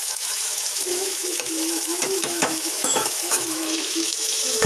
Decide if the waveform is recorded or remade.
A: remade